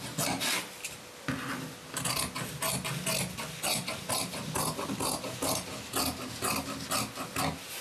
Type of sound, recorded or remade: recorded